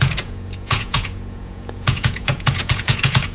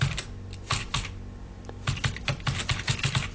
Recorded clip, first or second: second